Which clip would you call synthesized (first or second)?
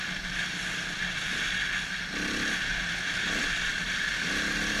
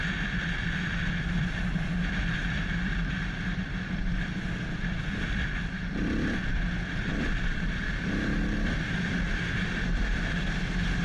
second